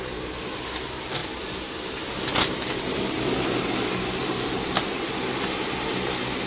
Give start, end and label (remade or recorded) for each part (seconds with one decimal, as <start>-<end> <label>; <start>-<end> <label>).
0.0-6.5 recorded

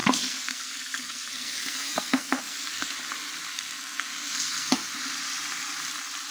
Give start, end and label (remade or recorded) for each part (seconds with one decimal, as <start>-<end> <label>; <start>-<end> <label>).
0.0-2.9 remade; 2.9-3.5 recorded; 3.5-4.9 remade; 4.9-6.3 recorded

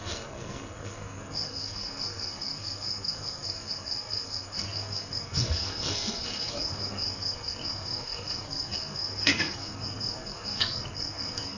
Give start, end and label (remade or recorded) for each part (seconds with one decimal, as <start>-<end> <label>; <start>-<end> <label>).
0.0-11.6 remade

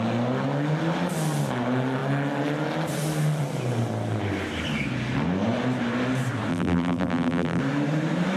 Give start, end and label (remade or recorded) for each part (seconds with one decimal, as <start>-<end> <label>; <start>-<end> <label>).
0.0-6.5 recorded; 6.5-7.6 remade; 7.6-8.4 recorded

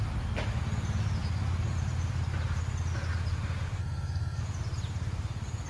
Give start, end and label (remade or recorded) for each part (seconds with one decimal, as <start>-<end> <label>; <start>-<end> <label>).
0.0-3.8 recorded; 3.8-4.4 remade; 4.4-5.7 recorded

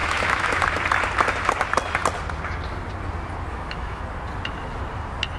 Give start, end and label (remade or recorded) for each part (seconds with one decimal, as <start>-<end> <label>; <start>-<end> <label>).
0.0-0.6 remade; 0.6-3.5 recorded; 3.5-4.0 remade; 4.0-5.4 recorded